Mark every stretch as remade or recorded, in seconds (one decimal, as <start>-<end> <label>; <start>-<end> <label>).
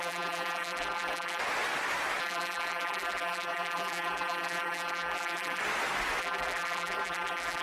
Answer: 0.0-1.4 remade; 1.4-2.2 recorded; 2.2-5.6 remade; 5.6-6.2 recorded; 6.2-7.6 remade